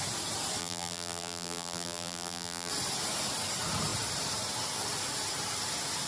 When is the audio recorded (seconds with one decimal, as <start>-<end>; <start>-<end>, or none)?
0.0-0.6; 2.7-6.1